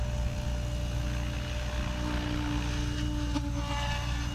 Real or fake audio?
real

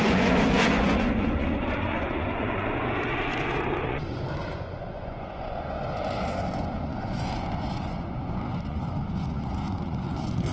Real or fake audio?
fake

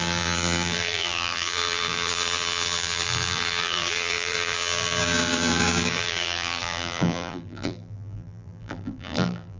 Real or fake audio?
fake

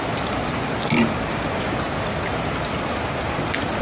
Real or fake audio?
real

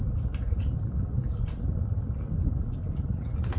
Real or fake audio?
real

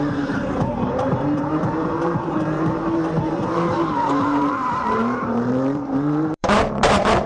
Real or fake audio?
fake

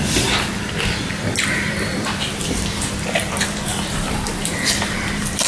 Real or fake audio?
fake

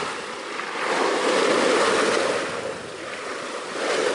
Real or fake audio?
real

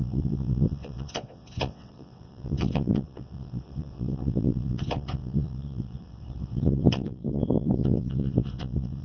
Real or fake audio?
fake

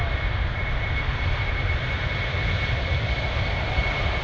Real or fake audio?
real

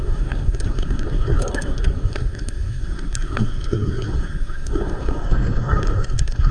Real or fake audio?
fake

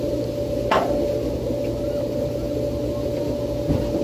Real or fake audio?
real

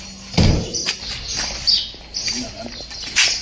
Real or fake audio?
real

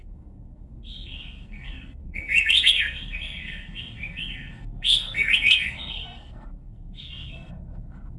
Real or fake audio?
fake